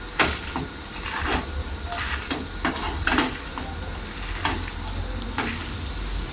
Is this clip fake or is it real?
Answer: fake